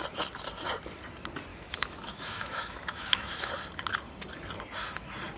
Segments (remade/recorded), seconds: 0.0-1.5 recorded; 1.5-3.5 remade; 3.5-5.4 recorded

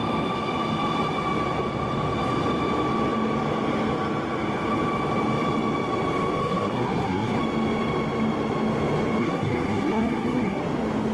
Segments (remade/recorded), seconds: 0.0-6.4 recorded; 6.4-7.4 remade; 7.4-9.2 recorded; 9.2-10.6 remade; 10.6-11.1 recorded

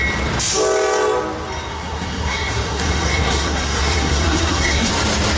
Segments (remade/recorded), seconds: 0.0-1.7 recorded; 1.7-4.9 remade; 4.9-5.4 recorded

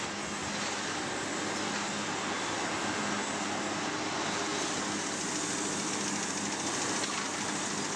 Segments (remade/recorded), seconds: 0.0-8.0 recorded

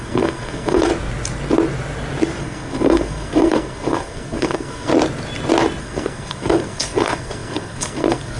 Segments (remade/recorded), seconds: 0.0-0.9 remade; 0.9-2.4 recorded; 2.4-4.9 remade; 4.9-5.8 recorded; 5.8-8.4 remade